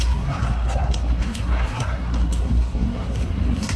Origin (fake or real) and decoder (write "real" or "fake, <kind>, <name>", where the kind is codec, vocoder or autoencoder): fake, codec, SNAC